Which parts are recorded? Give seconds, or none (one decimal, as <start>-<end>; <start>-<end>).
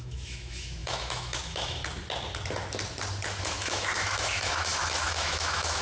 1.8-3.4